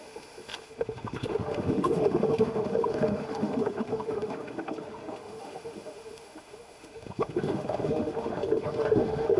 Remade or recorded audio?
remade